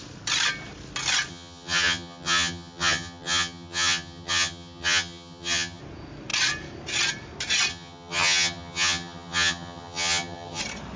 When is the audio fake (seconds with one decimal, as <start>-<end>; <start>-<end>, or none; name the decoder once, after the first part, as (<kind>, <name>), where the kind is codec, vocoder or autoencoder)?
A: 1.3-5.8 (vocoder, HiFi-GAN); 7.7-10.6